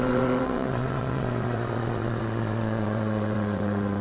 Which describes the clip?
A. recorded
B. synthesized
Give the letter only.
B